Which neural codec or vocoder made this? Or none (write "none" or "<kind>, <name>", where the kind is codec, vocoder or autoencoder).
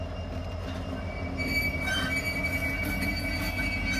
none